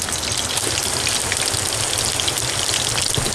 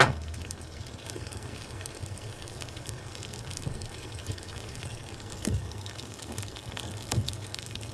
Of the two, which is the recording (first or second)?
first